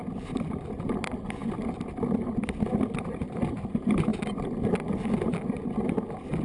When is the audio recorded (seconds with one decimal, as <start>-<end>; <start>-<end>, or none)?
0.0-6.4